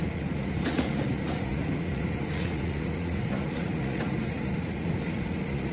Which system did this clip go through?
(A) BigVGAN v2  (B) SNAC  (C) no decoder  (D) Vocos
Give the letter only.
D